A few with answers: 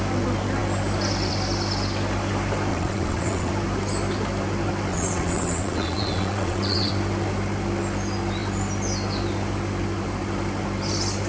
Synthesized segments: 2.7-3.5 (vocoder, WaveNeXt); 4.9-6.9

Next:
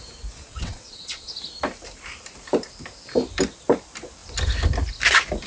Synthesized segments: 0.5-1.3 (vocoder, WaveNeXt)

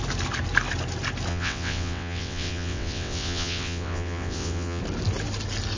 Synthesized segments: 1.3-4.8 (vocoder, WaveNeXt)

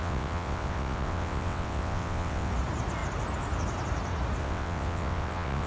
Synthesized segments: 0.0-2.5 (vocoder, WaveNeXt); 4.4-5.7

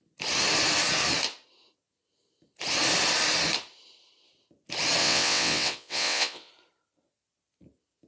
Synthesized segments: 5.0-6.5 (vocoder, WaveNeXt)

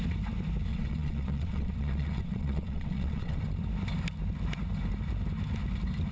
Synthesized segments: 0.7-3.4 (vocoder, WaveNeXt)

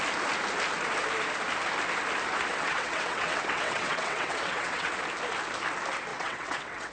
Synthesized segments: 2.5-4.9 (vocoder, WaveNeXt); 6.1-6.9

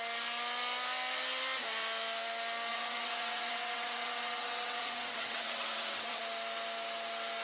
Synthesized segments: 2.7-6.2 (vocoder, WaveNeXt)